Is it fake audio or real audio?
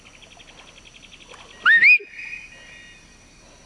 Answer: real